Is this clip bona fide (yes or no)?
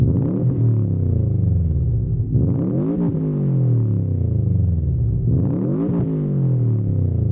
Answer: yes